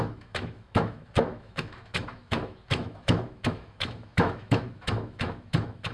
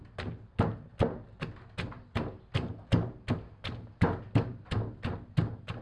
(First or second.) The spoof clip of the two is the first